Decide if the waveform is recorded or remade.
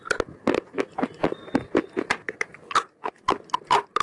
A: recorded